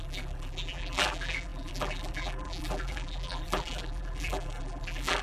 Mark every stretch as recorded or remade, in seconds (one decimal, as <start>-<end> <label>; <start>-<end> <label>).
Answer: 0.0-5.2 remade